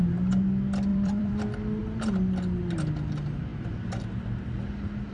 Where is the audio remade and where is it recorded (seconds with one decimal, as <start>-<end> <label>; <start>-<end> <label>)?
0.0-0.9 recorded; 0.9-1.4 remade; 1.4-5.1 recorded